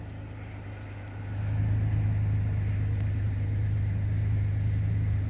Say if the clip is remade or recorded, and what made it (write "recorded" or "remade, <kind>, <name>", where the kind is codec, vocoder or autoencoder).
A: recorded